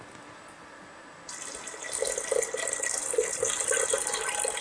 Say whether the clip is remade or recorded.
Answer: recorded